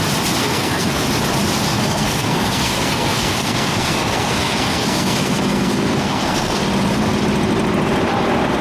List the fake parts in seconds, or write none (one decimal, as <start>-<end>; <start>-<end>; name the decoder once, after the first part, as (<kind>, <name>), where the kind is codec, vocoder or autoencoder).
0.4-1.0 (codec, SNAC); 1.7-6.6